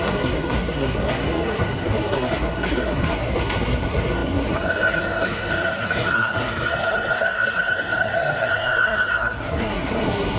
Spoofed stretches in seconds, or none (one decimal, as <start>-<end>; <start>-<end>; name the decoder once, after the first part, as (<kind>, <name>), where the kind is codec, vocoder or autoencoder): 0.0-10.4 (codec, SNAC)